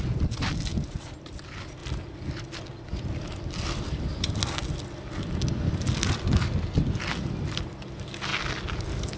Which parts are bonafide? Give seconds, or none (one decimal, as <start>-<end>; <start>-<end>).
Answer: 0.0-9.2